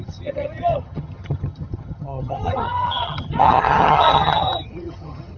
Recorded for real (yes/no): no